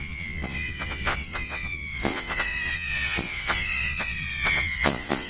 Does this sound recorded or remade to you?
remade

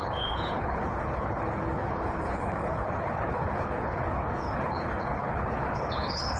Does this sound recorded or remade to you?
remade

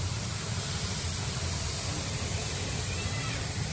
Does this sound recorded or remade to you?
remade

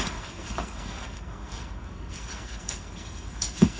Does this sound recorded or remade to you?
remade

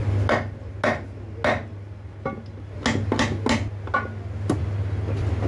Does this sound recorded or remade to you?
recorded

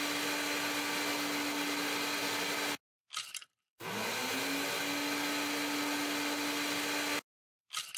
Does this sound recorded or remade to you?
recorded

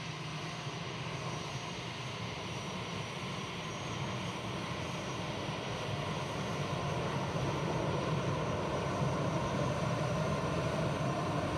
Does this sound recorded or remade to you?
remade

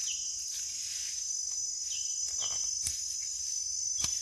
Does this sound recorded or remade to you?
recorded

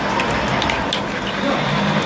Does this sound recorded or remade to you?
recorded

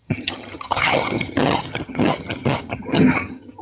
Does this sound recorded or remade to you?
remade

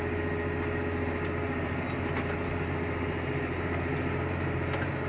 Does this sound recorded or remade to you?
recorded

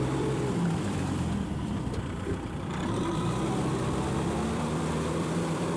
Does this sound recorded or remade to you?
remade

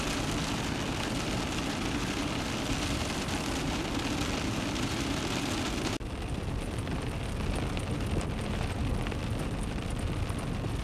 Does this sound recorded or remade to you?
recorded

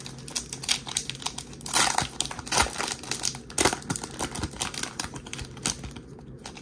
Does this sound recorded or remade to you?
recorded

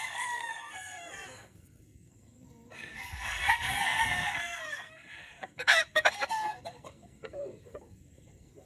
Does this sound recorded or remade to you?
remade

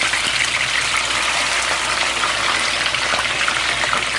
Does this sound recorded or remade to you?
recorded